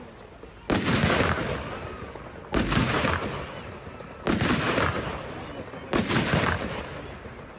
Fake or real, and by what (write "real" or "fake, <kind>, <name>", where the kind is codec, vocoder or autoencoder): real